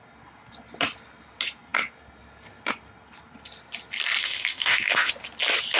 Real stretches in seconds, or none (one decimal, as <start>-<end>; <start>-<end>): 0.0-4.2; 5.1-5.8